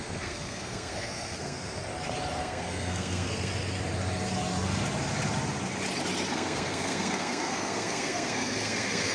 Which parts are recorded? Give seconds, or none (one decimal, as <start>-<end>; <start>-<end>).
1.8-2.4; 3.5-6.3